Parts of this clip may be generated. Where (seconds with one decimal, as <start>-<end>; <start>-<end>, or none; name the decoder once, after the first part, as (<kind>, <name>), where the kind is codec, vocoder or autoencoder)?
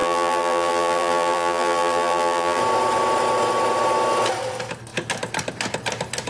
0.0-2.6 (vocoder, BigVGAN v2)